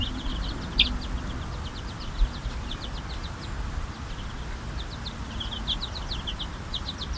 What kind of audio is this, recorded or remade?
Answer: recorded